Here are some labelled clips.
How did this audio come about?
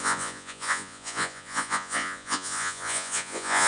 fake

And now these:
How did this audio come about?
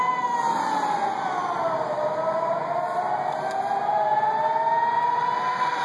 real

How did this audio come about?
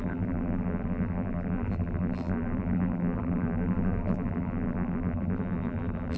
fake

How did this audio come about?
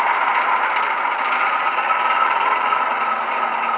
real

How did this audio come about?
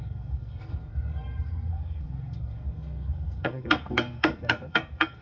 fake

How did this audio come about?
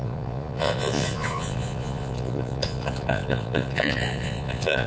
fake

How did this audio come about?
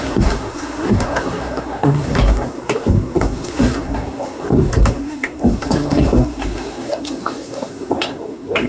fake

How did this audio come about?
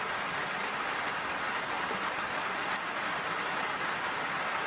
real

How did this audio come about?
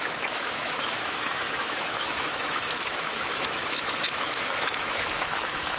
fake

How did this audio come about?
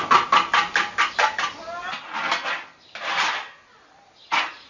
real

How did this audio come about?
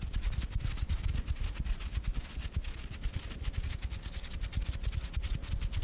real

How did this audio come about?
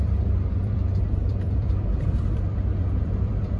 fake